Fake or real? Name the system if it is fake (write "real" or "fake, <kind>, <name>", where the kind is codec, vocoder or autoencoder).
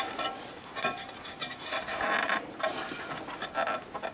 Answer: real